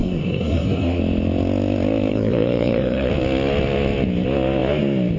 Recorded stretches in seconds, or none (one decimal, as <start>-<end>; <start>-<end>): 1.0-2.1; 3.1-5.2